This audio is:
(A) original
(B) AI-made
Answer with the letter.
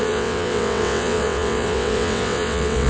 B